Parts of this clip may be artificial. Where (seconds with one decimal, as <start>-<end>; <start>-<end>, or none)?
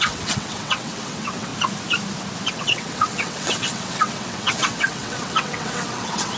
0.0-1.5; 2.5-6.4